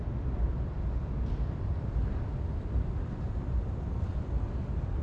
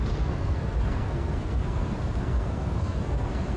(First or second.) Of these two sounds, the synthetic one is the second